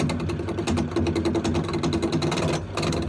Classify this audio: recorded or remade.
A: recorded